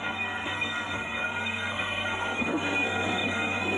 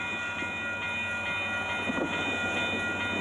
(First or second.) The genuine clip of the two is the second